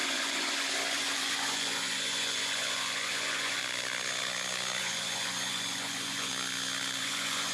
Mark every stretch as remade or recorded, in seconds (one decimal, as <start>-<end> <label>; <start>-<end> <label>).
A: 0.0-3.6 remade; 3.6-4.8 recorded; 4.8-6.3 remade; 6.3-7.0 recorded; 7.0-7.5 remade